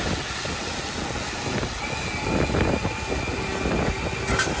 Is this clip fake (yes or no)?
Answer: no